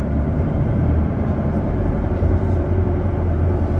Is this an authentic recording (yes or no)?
no